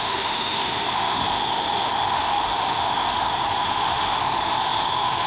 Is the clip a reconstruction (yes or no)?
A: yes